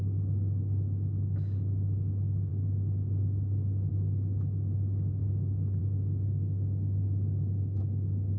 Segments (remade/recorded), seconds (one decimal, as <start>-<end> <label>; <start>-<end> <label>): 0.0-2.5 remade; 2.5-3.9 recorded; 3.9-5.2 remade; 5.2-5.8 recorded; 5.8-8.4 remade